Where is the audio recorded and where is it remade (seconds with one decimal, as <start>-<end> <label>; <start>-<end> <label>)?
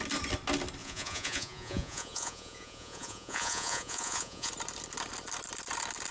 0.0-0.8 recorded; 0.8-4.5 remade; 4.5-6.1 recorded